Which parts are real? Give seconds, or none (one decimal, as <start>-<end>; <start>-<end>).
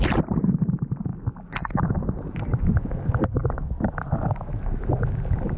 1.1-1.8; 3.4-4.7